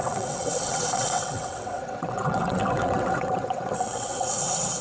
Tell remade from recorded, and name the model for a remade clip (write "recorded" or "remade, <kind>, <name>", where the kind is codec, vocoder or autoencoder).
remade, vocoder, WaveNeXt